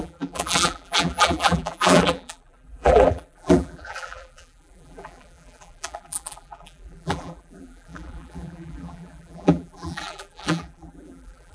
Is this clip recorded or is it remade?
remade